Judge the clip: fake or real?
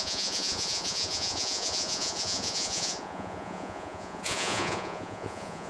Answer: fake